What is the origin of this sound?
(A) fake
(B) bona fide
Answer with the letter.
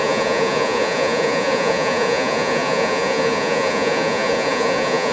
A